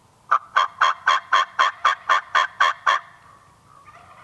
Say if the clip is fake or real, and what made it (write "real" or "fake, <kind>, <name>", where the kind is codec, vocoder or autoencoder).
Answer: real